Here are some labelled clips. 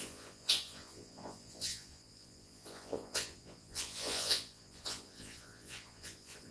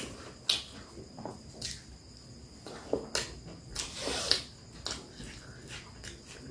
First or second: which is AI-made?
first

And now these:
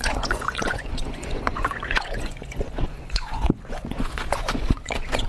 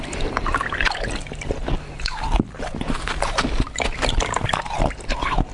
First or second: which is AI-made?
first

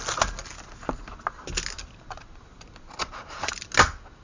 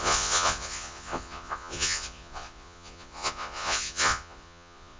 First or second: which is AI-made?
second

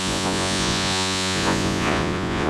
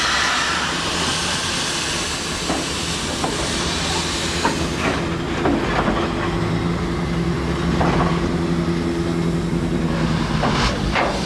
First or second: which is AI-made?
first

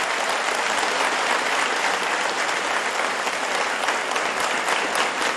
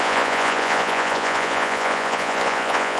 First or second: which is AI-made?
second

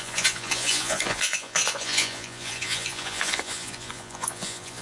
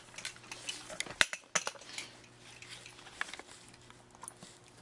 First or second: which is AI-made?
first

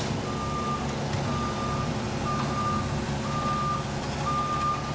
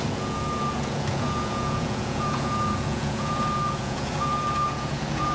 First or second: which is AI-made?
second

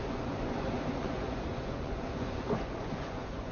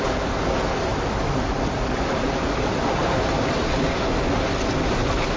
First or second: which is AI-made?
first